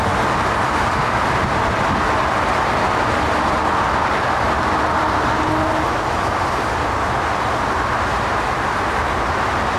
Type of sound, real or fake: real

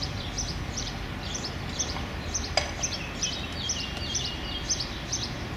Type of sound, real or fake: fake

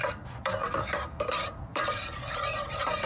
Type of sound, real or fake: fake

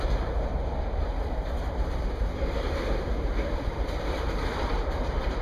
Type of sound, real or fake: fake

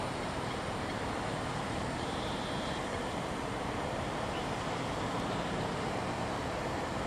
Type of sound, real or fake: fake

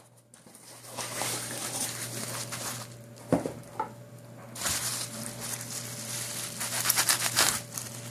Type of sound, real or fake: fake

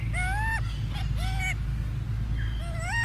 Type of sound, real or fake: real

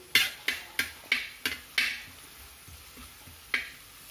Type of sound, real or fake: real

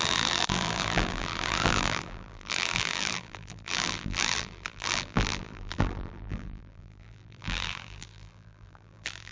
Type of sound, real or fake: fake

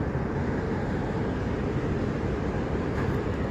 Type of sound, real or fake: real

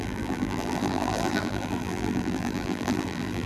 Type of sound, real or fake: fake